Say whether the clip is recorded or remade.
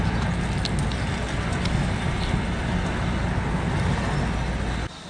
recorded